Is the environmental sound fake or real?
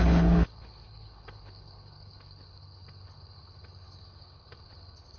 fake